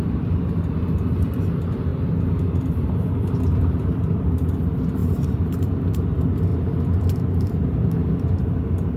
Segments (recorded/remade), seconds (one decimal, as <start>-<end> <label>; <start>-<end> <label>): 0.0-1.9 recorded; 1.9-2.8 remade; 2.8-5.0 recorded; 5.0-5.7 remade; 5.7-9.0 recorded